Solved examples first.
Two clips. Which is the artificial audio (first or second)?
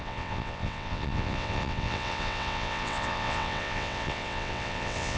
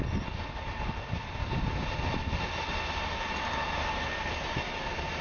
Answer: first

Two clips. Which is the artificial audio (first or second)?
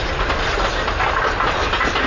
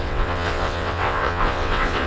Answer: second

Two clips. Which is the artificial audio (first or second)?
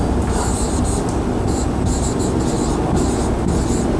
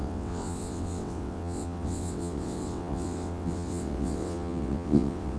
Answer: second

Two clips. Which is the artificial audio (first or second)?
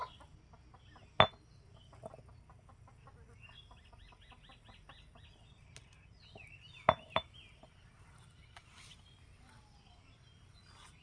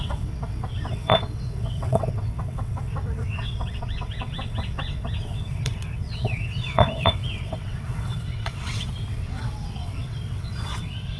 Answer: second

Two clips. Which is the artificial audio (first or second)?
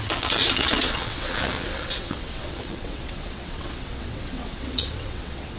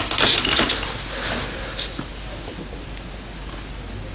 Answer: first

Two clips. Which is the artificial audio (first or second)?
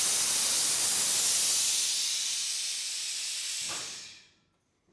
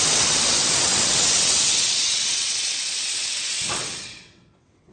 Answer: second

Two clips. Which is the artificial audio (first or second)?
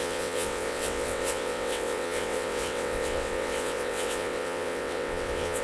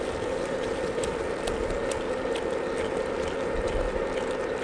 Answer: first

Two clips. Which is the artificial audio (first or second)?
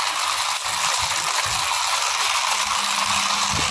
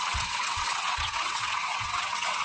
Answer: second